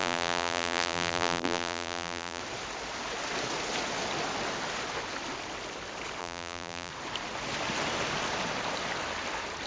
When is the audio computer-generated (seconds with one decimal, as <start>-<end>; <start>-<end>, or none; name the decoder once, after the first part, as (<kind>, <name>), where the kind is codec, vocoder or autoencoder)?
0.0-2.4 (vocoder, BigVGAN v2); 6.2-6.9